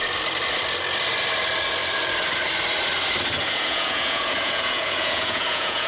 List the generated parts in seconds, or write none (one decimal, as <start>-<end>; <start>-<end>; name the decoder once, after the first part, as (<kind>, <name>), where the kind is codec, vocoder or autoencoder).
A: 3.5-5.9 (vocoder, Vocos)